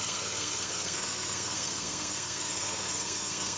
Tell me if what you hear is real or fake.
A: fake